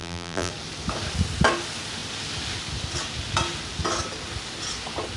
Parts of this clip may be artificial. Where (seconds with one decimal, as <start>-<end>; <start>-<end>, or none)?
0.0-0.5